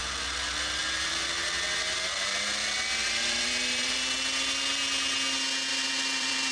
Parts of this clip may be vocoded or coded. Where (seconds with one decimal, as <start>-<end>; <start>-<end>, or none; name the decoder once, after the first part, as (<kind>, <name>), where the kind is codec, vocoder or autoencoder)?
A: 3.0-3.9 (vocoder, BigVGAN v2); 5.7-6.5